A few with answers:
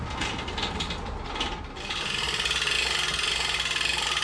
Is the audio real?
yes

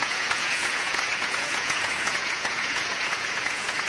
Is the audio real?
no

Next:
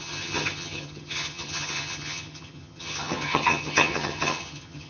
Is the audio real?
no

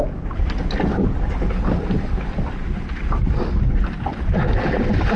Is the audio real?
yes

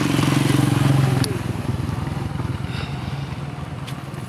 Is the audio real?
yes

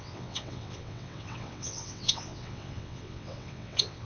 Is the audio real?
no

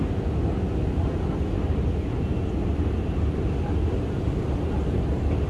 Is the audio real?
yes